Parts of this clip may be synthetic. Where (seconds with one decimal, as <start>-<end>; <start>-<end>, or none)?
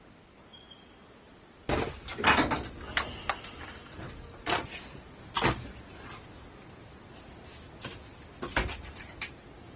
none